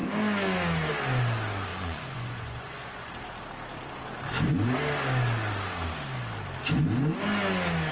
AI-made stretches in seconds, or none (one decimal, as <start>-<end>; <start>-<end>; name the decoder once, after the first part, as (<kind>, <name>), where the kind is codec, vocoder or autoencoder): 1.7-3.1 (vocoder, Vocos)